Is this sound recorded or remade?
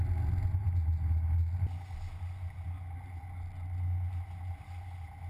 recorded